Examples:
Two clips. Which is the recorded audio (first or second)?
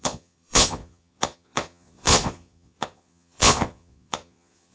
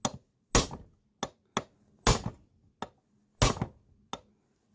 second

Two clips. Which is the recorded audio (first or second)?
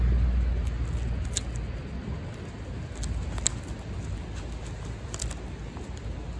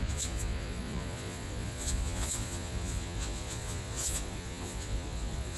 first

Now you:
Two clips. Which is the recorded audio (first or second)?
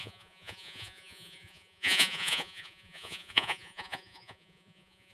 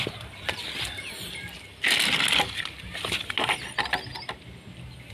second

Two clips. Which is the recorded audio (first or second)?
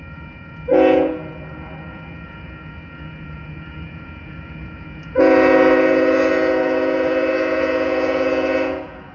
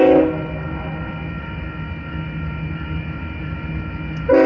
second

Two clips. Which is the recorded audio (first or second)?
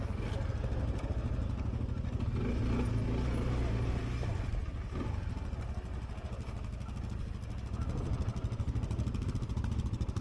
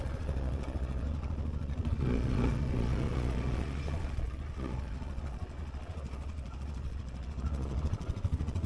first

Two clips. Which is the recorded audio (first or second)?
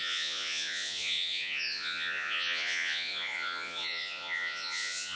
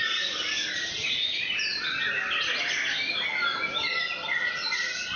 second